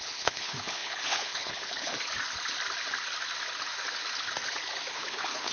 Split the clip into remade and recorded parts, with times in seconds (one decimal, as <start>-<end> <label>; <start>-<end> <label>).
0.0-1.9 remade; 1.9-4.9 recorded; 4.9-5.5 remade